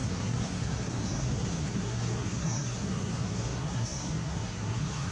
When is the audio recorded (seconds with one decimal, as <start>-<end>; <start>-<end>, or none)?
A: none